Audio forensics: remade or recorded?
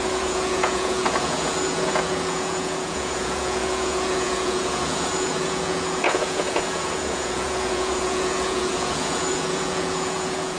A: remade